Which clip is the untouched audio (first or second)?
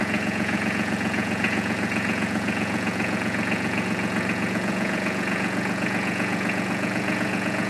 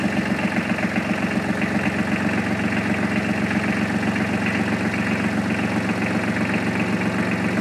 second